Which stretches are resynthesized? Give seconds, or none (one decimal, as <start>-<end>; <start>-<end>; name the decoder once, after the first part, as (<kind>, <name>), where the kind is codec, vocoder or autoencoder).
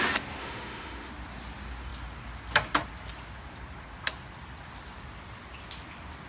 0.4-1.1 (autoencoder, DAC-VAE)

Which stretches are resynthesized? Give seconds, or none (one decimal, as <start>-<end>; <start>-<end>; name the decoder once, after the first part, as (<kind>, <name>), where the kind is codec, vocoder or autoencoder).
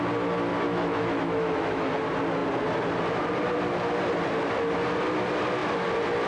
0.5-1.9 (autoencoder, DAC-VAE)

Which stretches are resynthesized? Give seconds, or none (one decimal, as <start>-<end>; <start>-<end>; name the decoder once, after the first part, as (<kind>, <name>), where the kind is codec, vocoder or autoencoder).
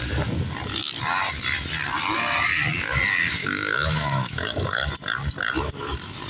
3.4-4.9 (autoencoder, DAC-VAE)